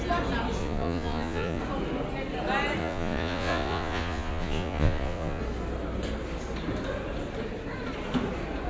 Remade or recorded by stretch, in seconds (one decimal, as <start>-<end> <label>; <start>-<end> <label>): 0.0-0.6 recorded; 0.6-1.6 remade; 1.6-2.8 recorded; 2.8-5.4 remade; 5.4-8.7 recorded